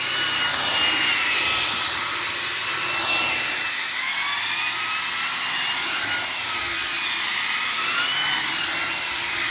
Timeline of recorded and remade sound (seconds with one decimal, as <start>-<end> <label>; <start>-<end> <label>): 0.0-2.6 remade; 2.6-3.2 recorded; 3.2-6.8 remade; 6.8-7.6 recorded; 7.6-9.5 remade